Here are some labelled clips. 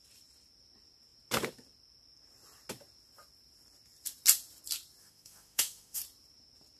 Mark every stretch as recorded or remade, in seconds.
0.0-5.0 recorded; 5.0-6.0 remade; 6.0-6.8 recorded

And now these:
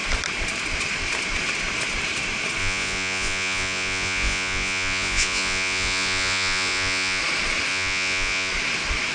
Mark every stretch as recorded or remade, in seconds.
0.0-2.6 recorded; 2.6-7.2 remade; 7.2-7.7 recorded; 7.7-8.5 remade; 8.5-9.1 recorded

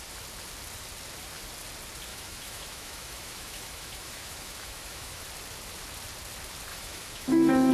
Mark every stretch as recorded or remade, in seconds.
0.0-2.1 recorded; 2.1-5.2 remade; 5.2-6.7 recorded; 6.7-7.7 remade

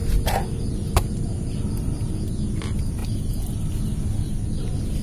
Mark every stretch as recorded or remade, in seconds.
0.0-2.0 remade; 2.0-5.0 recorded

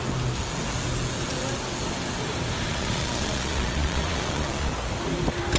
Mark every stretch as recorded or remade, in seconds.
0.0-2.7 recorded; 2.7-4.7 remade; 4.7-5.6 recorded